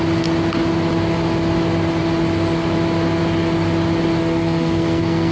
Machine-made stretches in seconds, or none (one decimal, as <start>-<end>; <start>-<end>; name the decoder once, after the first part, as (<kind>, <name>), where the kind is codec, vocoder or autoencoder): 4.2-5.3 (codec, SNAC)

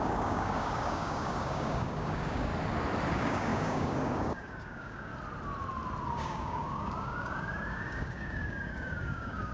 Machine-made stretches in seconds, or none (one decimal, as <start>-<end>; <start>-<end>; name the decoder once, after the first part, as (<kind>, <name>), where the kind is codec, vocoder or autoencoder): 0.0-2.5 (codec, DAC); 3.1-5.1; 6.1-9.5

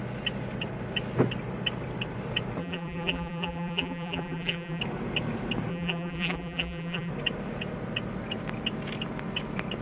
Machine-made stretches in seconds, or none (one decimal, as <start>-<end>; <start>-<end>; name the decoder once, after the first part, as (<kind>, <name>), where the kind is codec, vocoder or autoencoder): 2.6-4.8 (vocoder, BigVGAN v2); 5.7-7.1

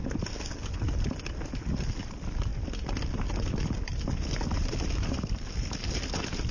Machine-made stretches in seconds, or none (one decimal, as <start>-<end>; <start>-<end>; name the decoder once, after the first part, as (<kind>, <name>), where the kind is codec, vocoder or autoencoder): none

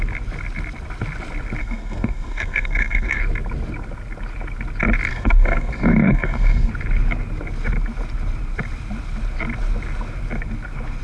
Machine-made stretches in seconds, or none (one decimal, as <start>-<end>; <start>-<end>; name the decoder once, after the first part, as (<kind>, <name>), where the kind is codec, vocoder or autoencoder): 1.6-3.2 (codec, SNAC); 5.1-6.7

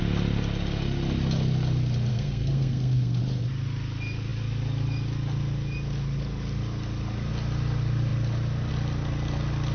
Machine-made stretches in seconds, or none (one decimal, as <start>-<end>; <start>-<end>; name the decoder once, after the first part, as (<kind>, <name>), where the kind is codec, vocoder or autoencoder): 2.1-3.2 (codec, SNAC)

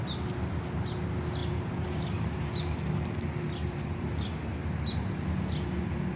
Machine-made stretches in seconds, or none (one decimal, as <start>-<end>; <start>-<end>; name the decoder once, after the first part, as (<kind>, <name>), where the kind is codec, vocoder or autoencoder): 1.4-2.5 (vocoder, BigVGAN v2); 3.6-4.3